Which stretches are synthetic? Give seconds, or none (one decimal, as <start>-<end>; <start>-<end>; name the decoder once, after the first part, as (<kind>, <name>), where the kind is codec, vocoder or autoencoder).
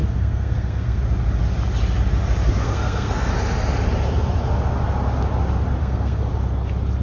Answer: 0.0-1.0 (codec, SNAC); 2.6-3.3; 5.8-6.3